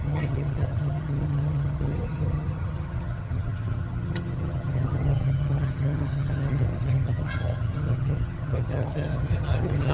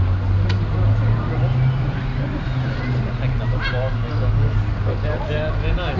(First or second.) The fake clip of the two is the first